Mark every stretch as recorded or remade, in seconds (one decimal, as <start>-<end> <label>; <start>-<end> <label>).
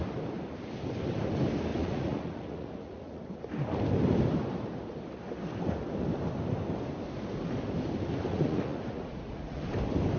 0.0-1.7 recorded; 1.7-3.3 remade; 3.3-8.3 recorded; 8.3-9.6 remade; 9.6-10.2 recorded